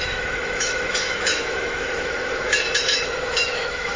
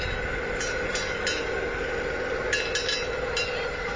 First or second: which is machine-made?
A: first